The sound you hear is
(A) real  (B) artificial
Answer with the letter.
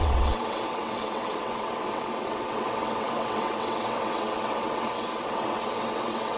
B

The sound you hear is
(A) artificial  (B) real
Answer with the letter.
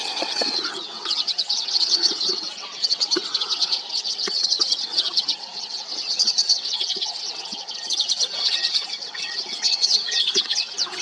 A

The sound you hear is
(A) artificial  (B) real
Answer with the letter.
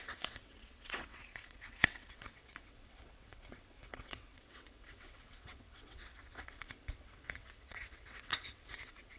A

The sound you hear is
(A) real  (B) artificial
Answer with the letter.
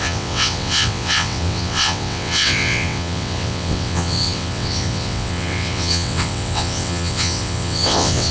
B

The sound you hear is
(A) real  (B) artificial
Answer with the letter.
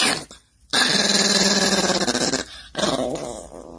A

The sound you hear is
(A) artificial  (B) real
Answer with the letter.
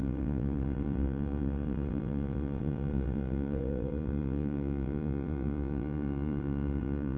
A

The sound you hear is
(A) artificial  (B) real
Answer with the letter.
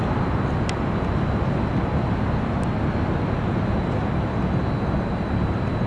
B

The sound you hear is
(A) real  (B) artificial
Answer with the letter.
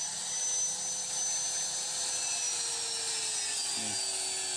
A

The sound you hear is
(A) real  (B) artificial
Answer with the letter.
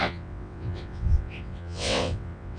B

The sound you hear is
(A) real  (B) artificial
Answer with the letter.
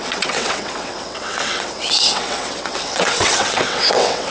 B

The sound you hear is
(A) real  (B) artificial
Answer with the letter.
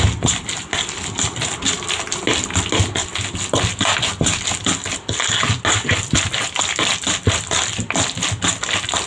A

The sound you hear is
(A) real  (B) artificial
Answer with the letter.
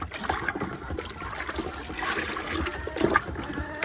A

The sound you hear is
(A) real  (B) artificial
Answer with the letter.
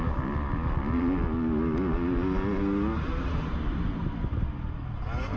A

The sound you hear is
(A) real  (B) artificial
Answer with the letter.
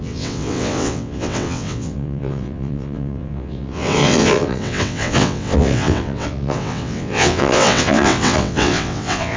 B